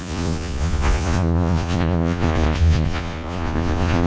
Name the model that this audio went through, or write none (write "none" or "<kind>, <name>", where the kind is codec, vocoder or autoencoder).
vocoder, Vocos